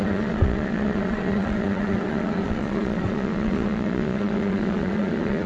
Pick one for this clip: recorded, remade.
remade